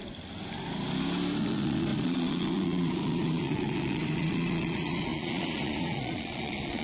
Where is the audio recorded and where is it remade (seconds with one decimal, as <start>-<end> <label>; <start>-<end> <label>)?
0.0-1.4 recorded; 1.4-6.8 remade